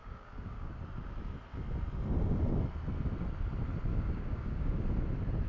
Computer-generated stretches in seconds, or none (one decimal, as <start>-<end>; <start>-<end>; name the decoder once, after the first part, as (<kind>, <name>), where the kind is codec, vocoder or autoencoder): 0.0-0.8 (codec, DAC); 3.9-4.8